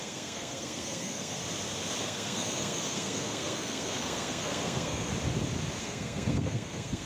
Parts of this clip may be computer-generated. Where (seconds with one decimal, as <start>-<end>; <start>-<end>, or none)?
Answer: 0.0-1.4; 2.0-5.1; 5.8-7.1